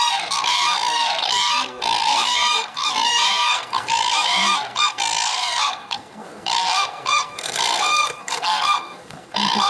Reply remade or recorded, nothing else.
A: remade